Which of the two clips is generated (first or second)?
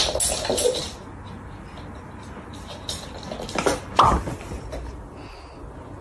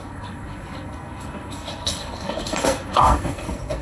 second